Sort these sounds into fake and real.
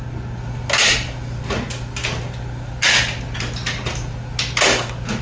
real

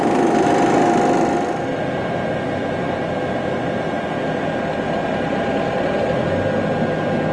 real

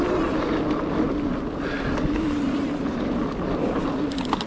real